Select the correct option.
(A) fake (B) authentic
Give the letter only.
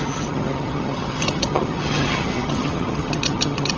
A